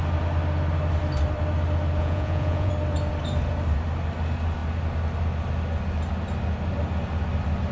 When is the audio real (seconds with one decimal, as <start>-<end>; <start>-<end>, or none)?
0.0-2.0; 2.7-7.7